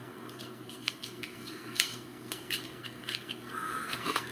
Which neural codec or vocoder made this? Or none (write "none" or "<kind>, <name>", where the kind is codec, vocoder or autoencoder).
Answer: codec, SNAC